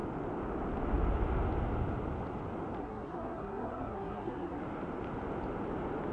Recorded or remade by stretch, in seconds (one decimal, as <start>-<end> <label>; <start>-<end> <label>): 0.0-2.8 recorded; 2.8-4.6 remade; 4.6-6.1 recorded

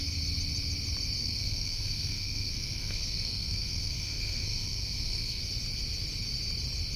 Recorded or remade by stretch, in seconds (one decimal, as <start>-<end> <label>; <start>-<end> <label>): 0.0-1.2 recorded; 1.2-5.4 remade; 5.4-7.0 recorded

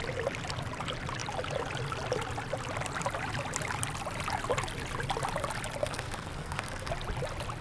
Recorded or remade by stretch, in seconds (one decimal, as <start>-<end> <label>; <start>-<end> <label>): 0.0-5.8 recorded; 5.8-6.9 remade; 6.9-7.6 recorded

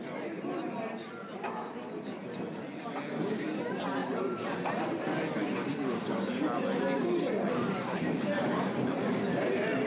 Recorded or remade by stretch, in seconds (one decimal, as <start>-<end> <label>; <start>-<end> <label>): 0.0-9.9 recorded

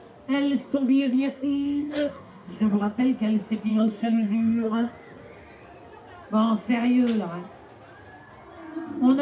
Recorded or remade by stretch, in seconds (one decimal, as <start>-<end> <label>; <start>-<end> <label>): 0.0-0.6 recorded; 0.6-3.0 remade; 3.0-3.7 recorded; 3.7-4.9 remade; 4.9-9.2 recorded

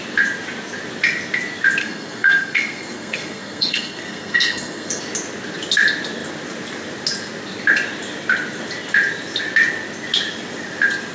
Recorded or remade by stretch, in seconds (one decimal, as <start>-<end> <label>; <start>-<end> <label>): 0.0-1.8 recorded; 1.8-5.0 remade; 5.0-11.1 recorded

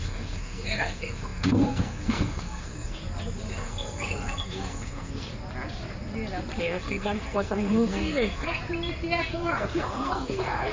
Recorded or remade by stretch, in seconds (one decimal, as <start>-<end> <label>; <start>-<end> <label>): 0.0-3.0 remade; 3.0-3.5 recorded; 3.5-5.3 remade; 5.3-6.6 recorded; 6.6-8.6 remade; 8.6-9.2 recorded; 9.2-10.7 remade